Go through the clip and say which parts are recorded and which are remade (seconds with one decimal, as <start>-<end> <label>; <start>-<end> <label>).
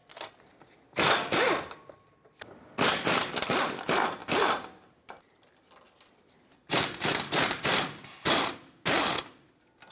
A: 0.0-3.8 remade; 3.8-4.2 recorded; 4.2-7.6 remade; 7.6-9.9 recorded